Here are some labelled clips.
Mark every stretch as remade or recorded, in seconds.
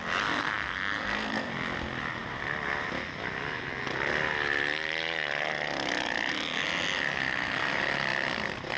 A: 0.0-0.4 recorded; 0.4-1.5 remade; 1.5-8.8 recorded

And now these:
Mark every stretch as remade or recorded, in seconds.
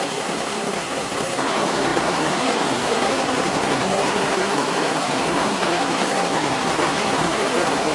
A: 0.0-7.9 remade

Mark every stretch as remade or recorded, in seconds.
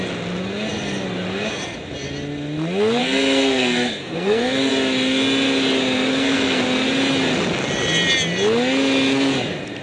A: 0.0-3.0 recorded; 3.0-4.7 remade; 4.7-6.1 recorded; 6.1-6.6 remade; 6.6-9.8 recorded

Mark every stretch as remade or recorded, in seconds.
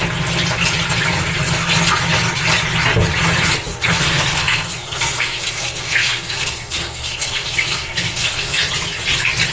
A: 0.0-3.7 recorded; 3.7-8.7 remade; 8.7-9.5 recorded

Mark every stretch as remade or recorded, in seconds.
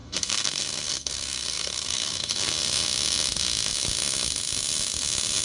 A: 0.0-2.5 remade; 2.5-5.4 recorded